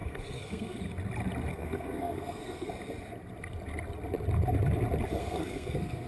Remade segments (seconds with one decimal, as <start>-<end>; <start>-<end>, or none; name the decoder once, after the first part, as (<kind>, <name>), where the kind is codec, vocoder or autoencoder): 0.0-0.8 (codec, SNAC); 1.5-2.7; 5.2-6.1